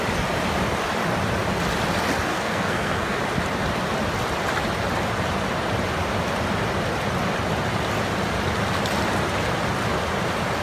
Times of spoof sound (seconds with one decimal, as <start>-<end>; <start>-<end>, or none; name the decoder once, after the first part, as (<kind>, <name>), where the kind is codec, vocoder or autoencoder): 2.3-3.2 (codec, SNAC)